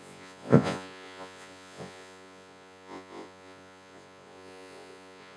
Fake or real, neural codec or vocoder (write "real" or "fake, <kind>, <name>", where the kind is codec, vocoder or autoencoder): fake, vocoder, Vocos